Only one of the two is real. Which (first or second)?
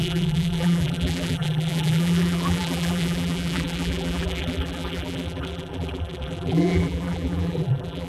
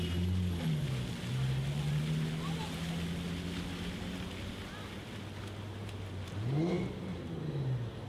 second